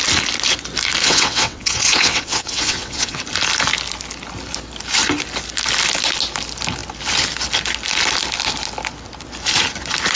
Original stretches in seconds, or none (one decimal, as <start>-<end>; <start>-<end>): 0.0-1.0; 3.2-10.2